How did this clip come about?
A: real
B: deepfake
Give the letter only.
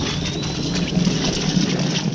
A